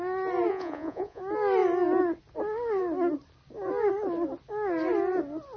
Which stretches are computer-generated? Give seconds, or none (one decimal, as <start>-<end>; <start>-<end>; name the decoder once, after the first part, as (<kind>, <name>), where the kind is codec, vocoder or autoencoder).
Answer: 0.5-1.2 (vocoder, Vocos)